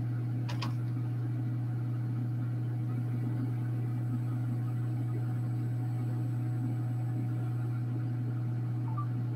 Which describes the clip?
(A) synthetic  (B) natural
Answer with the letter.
B